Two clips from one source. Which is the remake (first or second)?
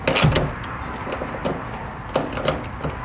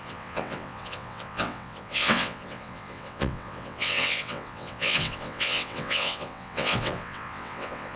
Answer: second